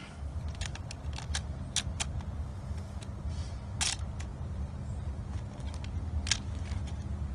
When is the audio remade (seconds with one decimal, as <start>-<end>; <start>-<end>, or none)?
none